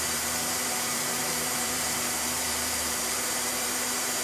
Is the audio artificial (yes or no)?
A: yes